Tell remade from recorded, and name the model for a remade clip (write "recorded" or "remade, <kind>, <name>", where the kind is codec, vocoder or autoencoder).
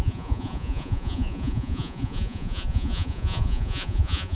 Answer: remade, vocoder, Vocos